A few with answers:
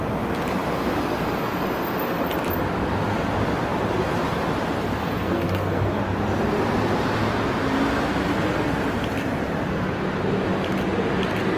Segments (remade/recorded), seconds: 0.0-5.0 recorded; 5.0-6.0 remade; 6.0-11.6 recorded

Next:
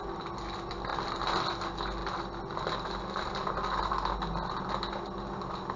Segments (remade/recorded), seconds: 0.0-5.8 recorded

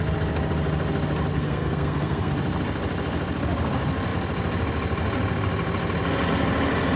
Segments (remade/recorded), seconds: 0.0-1.3 recorded; 1.3-2.3 remade; 2.3-7.0 recorded